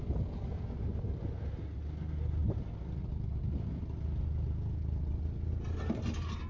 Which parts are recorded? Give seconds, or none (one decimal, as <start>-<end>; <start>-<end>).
0.0-6.5